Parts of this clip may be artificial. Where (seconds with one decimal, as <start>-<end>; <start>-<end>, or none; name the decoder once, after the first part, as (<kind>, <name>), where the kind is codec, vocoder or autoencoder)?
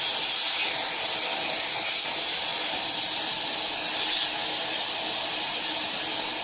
none